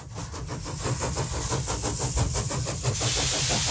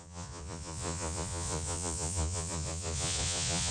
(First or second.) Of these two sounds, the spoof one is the second